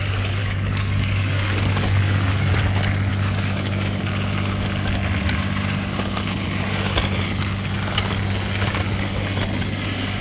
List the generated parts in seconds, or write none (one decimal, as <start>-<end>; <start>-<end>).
0.4-2.5; 3.1-4.0